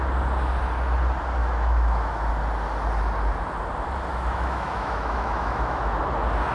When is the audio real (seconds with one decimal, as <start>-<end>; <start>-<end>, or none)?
0.0-1.4; 2.3-4.1; 6.0-6.5